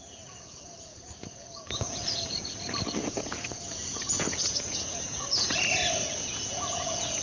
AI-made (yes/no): yes